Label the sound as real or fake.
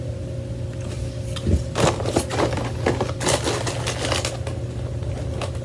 real